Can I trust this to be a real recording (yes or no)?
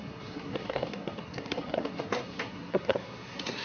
no